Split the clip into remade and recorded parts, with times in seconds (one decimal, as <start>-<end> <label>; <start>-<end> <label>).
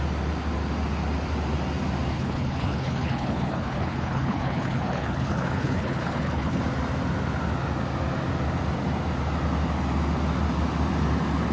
0.0-2.1 recorded; 2.1-6.6 remade; 6.6-11.5 recorded